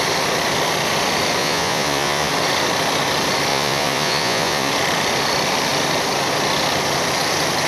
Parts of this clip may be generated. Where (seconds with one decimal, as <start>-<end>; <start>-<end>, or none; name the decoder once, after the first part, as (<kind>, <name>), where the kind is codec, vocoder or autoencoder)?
1.4-2.3 (vocoder, Vocos); 3.5-4.7